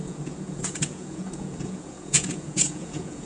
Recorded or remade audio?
remade